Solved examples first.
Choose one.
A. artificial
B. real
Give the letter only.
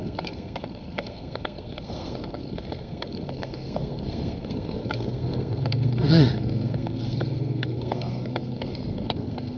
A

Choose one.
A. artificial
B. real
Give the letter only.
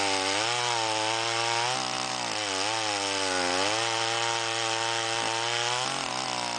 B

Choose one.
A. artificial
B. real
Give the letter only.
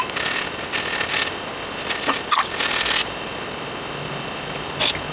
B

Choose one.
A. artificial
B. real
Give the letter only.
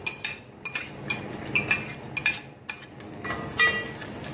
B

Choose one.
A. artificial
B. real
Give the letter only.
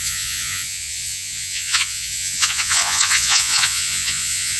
A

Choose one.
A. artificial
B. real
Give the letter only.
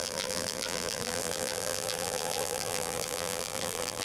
A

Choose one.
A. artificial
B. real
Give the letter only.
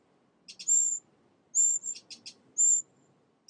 B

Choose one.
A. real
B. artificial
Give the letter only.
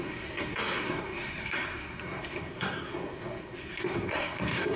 B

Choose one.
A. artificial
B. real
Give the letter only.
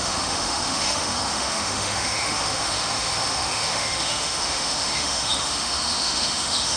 A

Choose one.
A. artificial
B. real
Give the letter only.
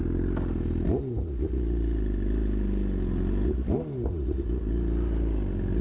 B